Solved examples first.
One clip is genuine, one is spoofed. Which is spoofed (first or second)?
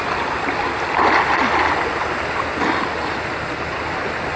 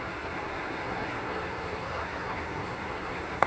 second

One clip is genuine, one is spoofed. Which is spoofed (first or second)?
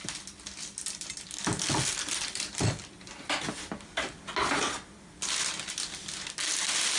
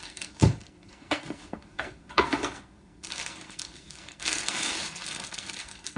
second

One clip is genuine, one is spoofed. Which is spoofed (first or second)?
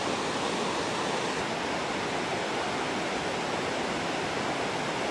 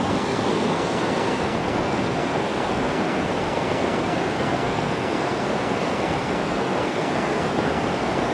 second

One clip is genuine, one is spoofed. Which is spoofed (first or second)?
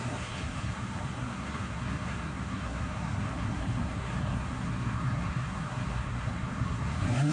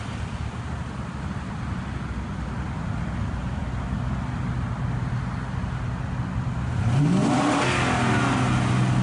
first